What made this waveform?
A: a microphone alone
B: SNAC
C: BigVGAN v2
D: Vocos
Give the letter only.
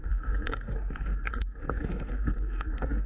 B